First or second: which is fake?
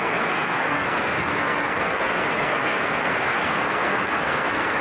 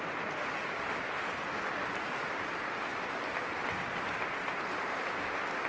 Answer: first